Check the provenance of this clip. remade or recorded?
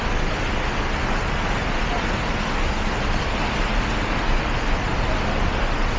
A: recorded